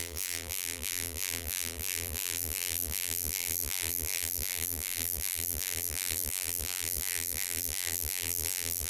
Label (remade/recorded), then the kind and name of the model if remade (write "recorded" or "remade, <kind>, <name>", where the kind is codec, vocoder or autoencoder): remade, vocoder, BigVGAN v2